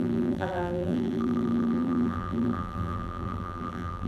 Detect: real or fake fake